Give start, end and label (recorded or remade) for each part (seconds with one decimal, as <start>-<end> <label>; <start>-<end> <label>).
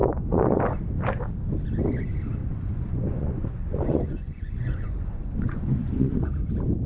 0.0-0.6 remade; 0.6-2.4 recorded; 2.4-6.5 remade; 6.5-6.9 recorded